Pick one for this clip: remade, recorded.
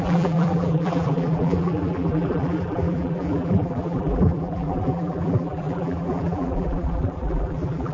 remade